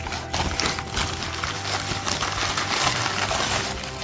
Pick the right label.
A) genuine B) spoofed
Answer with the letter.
A